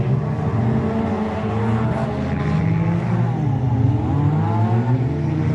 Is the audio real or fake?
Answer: real